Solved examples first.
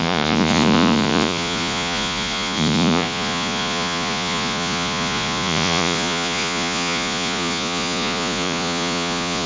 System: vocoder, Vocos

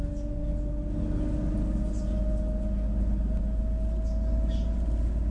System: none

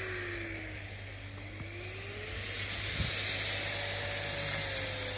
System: none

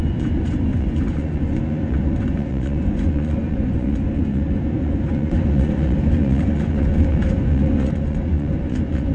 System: vocoder, Vocos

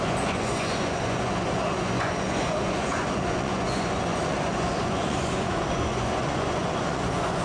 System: vocoder, Vocos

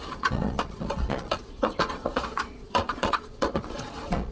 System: vocoder, Vocos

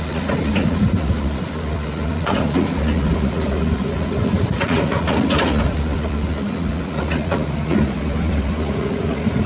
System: vocoder, Vocos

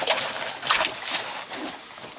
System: none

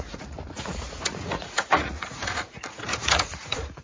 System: vocoder, Vocos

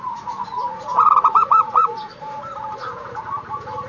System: vocoder, Vocos